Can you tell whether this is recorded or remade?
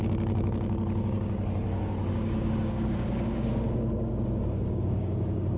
remade